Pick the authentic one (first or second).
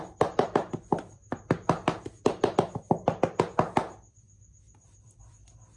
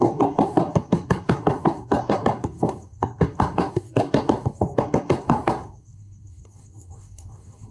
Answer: first